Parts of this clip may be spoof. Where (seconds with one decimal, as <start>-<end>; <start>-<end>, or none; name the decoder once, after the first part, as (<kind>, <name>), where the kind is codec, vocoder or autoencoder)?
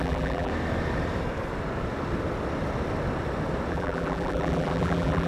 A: 0.0-0.5 (vocoder, BigVGAN v2); 3.7-5.3